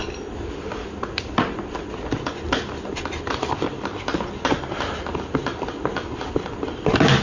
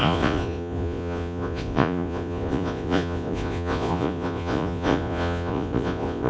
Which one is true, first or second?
first